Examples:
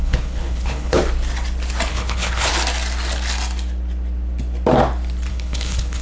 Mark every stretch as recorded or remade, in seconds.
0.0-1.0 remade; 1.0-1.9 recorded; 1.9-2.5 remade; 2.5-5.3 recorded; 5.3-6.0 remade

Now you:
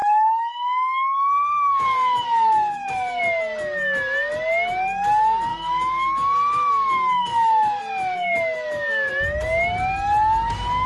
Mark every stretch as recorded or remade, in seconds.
0.0-3.2 remade; 3.2-5.5 recorded; 5.5-9.1 remade; 9.1-10.9 recorded

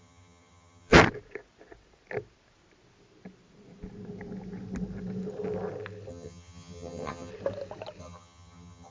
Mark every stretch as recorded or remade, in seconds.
0.0-1.0 remade; 1.0-6.1 recorded; 6.1-7.3 remade; 7.3-8.0 recorded; 8.0-8.9 remade